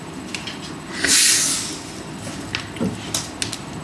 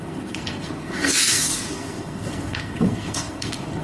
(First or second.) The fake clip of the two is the second